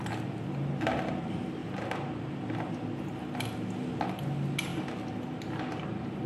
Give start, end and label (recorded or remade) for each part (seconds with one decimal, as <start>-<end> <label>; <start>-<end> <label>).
0.0-6.3 recorded